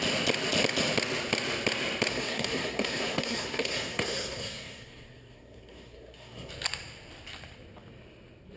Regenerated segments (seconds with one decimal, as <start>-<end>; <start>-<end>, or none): 2.1-6.5